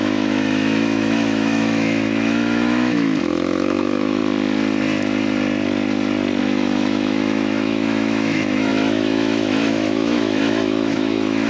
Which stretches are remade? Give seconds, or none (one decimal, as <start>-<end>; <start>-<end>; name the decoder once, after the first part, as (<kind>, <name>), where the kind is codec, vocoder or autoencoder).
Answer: 0.0-4.2 (autoencoder, DAC-VAE); 6.4-11.5